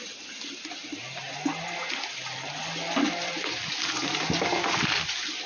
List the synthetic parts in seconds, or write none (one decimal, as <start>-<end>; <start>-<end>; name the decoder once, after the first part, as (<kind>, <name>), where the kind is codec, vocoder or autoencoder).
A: none